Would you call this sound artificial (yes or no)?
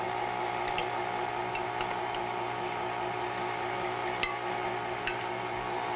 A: no